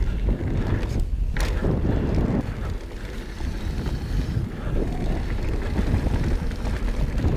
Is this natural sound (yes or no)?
yes